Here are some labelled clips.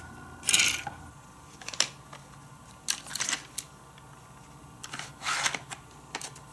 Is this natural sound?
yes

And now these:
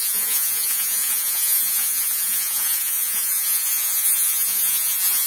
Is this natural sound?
no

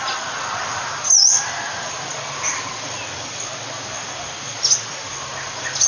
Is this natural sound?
yes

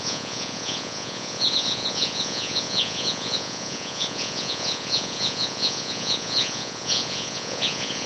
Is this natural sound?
no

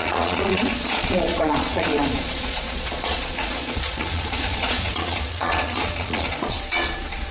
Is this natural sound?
no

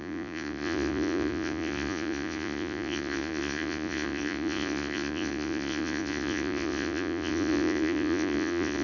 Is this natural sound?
no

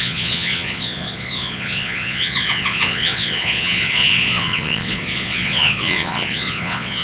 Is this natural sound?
no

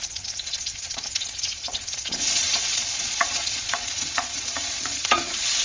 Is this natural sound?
no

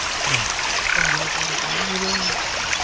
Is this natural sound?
yes